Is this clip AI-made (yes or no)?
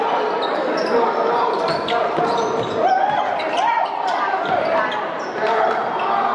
no